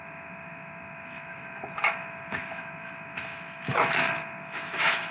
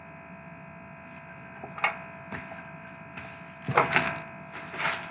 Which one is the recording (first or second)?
second